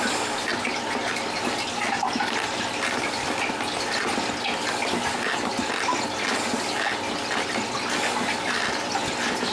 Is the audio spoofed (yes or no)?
no